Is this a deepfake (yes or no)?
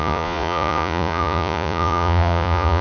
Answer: yes